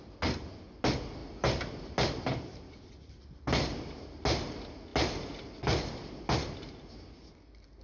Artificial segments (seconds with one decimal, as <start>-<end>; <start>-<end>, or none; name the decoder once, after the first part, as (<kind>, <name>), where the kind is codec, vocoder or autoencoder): none